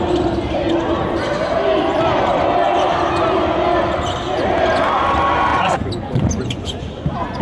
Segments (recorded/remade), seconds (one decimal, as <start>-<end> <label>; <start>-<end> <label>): 0.0-5.5 recorded; 5.5-7.0 remade; 7.0-7.4 recorded